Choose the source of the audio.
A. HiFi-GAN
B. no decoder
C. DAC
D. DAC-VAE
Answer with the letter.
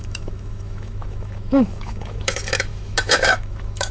D